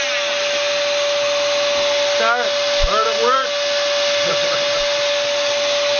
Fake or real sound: real